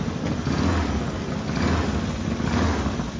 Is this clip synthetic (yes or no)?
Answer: no